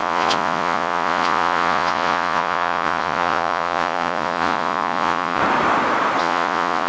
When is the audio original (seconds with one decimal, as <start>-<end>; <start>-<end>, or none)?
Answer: 5.4-6.2